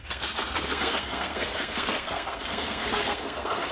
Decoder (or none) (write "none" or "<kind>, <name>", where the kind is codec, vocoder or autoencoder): codec, SNAC